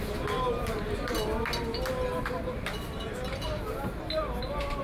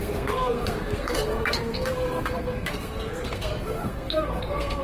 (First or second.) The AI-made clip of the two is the second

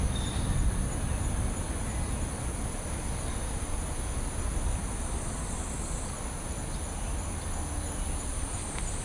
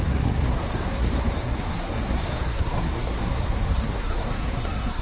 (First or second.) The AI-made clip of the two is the second